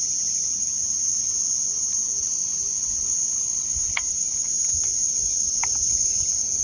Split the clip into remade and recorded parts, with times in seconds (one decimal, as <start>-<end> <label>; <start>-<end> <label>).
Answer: 0.0-6.6 recorded